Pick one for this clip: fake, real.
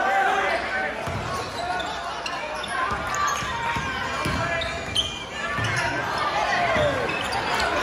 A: real